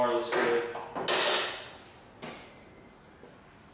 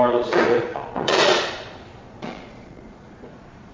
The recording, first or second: first